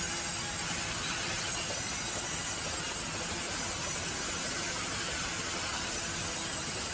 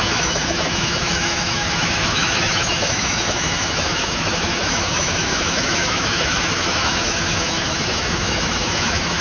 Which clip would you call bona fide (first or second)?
first